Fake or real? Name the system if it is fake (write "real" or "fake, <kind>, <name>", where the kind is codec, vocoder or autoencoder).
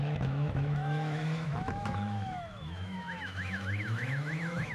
fake, autoencoder, DAC-VAE